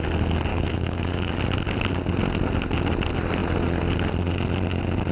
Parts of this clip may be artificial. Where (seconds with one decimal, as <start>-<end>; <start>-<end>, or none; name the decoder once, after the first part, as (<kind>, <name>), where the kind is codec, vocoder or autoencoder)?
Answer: 0.5-1.3 (autoencoder, DAC-VAE)